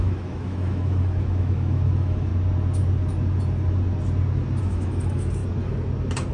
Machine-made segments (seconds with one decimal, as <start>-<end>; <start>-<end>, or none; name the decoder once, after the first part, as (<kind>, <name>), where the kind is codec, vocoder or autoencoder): 0.0-2.3 (autoencoder, DAC-VAE); 4.6-5.4